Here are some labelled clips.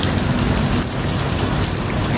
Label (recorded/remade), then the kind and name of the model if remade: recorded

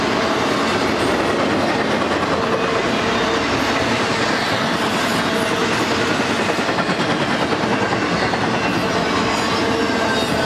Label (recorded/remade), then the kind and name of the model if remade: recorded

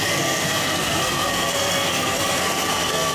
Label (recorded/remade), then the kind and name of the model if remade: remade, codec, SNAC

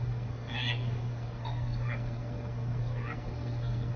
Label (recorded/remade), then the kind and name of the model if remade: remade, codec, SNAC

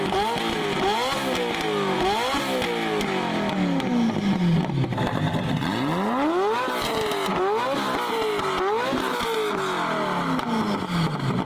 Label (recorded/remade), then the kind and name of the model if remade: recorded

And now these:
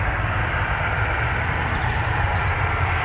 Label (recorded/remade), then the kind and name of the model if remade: recorded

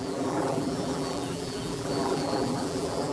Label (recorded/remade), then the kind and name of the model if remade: remade, vocoder, BigVGAN v2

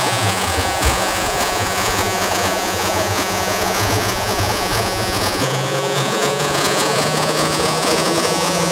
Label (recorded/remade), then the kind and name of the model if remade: remade, vocoder, Vocos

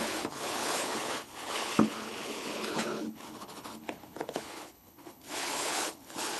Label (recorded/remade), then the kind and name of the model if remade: remade, codec, HILCodec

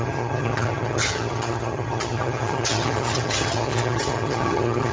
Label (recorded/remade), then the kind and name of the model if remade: remade, vocoder, HiFi-GAN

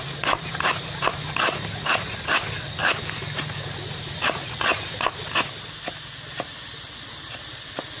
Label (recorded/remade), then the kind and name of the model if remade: recorded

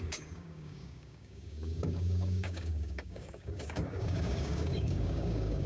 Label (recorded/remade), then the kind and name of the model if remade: remade, codec, DAC